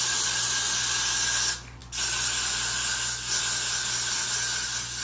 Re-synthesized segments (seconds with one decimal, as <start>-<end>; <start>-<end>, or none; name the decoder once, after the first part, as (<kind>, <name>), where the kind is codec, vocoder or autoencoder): none